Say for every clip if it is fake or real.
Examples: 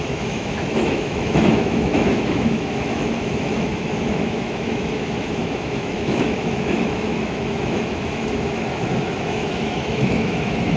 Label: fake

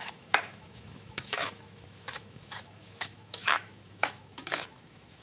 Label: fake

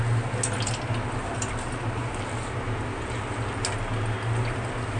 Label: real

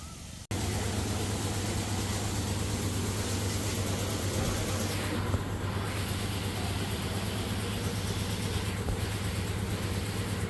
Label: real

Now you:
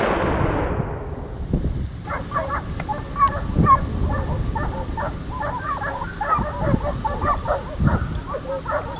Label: real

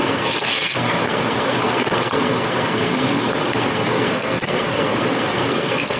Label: fake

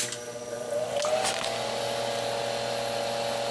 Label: real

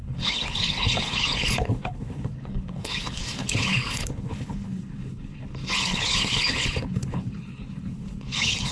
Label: fake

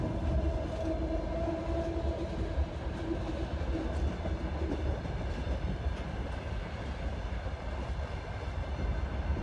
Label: real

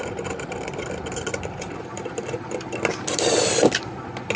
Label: fake